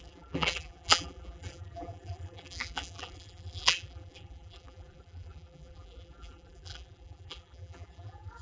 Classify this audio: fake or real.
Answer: fake